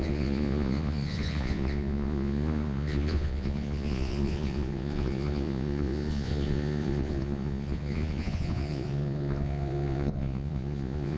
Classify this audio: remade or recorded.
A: remade